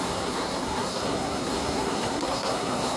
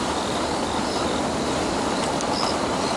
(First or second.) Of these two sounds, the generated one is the first